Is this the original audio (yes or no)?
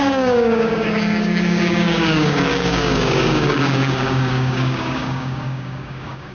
no